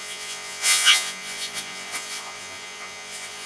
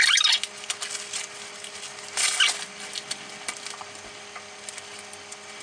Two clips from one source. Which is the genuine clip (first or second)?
second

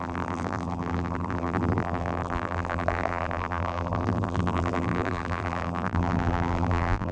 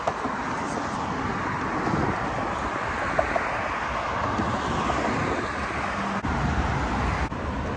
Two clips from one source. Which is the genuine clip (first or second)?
second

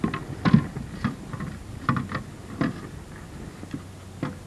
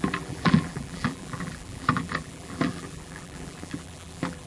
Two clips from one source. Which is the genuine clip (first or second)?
first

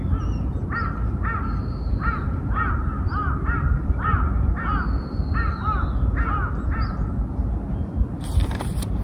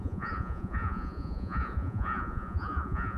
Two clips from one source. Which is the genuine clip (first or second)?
first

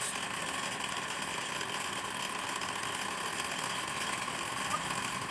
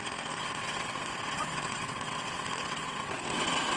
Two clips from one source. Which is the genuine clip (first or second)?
first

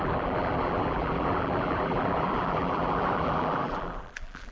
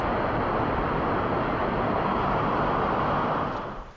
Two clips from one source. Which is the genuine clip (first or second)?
second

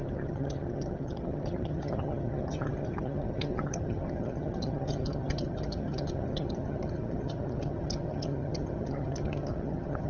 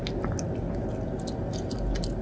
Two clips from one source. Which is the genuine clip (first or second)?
second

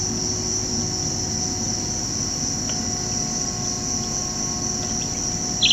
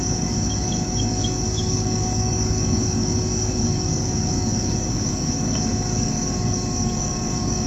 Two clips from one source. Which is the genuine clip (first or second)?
first